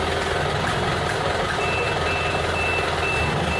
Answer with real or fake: real